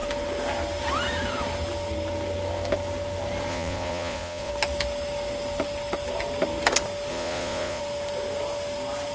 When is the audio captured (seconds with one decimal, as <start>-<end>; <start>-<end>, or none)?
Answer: 0.0-3.5; 4.5-7.1; 7.8-9.1